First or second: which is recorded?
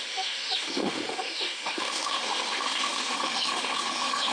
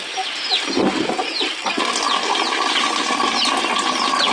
second